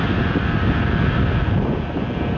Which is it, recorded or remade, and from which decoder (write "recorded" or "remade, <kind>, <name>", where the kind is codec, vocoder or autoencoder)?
recorded